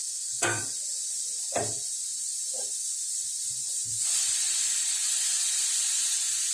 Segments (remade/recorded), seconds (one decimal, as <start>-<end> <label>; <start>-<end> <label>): 0.0-0.6 remade; 0.6-6.5 recorded